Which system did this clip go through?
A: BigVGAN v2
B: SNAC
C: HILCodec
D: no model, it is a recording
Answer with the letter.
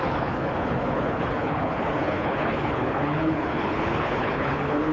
C